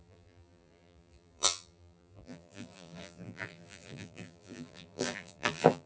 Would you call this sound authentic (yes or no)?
no